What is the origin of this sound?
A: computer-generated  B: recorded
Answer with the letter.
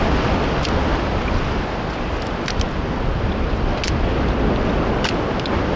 B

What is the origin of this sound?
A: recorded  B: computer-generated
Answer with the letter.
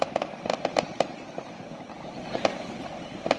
B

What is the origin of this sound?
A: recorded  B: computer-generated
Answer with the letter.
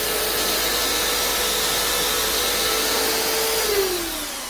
A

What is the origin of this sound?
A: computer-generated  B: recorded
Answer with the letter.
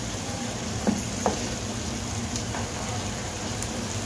B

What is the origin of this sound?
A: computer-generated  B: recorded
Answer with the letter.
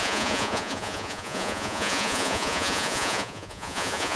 A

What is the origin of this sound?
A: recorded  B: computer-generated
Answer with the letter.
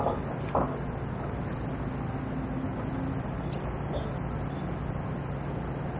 A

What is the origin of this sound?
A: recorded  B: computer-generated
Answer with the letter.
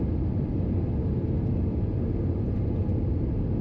A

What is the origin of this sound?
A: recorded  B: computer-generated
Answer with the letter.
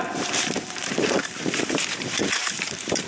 B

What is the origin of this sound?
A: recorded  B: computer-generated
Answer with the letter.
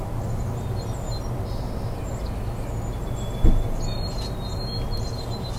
A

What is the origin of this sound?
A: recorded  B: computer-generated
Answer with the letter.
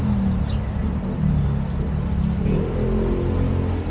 A